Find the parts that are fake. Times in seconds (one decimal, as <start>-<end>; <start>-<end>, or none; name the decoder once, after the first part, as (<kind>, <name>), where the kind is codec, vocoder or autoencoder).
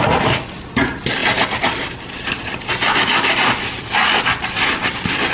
none